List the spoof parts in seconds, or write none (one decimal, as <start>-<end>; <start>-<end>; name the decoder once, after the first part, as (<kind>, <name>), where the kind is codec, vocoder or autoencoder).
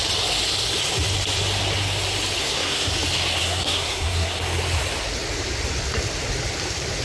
2.4-2.9 (codec, SNAC); 3.4-4.4